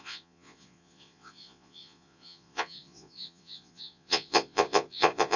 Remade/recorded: remade